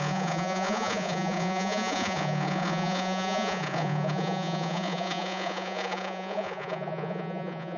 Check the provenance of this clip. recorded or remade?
remade